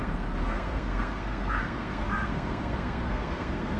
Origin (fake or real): fake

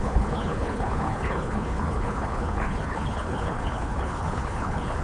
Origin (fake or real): fake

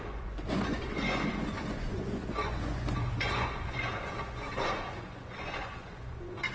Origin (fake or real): fake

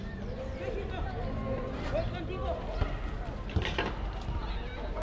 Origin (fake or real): real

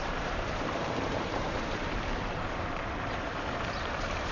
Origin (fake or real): fake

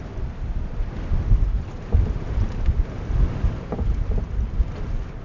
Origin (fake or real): real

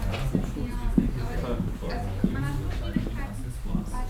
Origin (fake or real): real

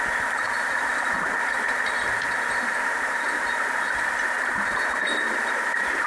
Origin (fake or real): real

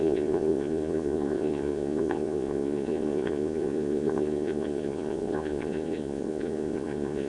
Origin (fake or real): fake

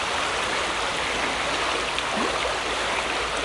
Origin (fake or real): real